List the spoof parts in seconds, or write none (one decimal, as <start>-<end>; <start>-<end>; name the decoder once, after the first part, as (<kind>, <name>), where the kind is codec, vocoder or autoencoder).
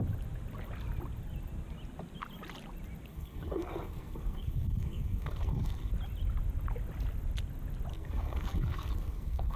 3.1-5.9 (codec, SNAC); 7.9-9.6